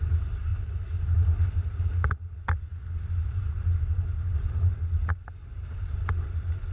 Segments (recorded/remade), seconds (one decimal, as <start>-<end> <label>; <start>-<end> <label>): 0.0-6.7 recorded

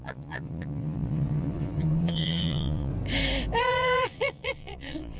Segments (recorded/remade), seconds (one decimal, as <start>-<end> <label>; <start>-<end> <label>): 0.0-2.9 remade; 2.9-3.6 recorded; 3.6-5.2 remade

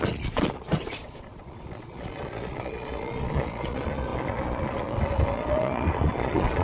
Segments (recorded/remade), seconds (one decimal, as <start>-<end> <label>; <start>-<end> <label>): 0.0-6.6 remade